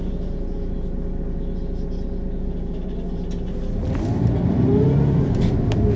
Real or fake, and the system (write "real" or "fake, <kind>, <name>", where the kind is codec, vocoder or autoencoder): real